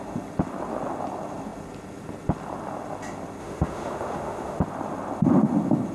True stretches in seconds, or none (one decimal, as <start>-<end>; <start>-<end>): 0.0-3.4; 4.6-5.9